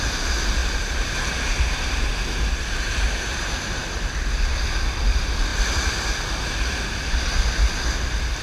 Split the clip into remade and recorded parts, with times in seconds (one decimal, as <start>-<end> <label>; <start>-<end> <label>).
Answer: 0.0-0.6 recorded; 0.6-3.4 remade; 3.4-8.4 recorded